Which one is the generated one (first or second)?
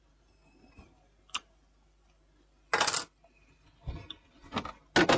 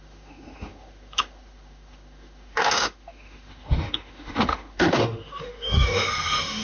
second